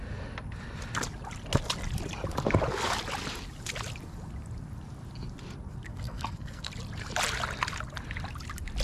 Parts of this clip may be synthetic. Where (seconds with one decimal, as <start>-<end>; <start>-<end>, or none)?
5.9-6.7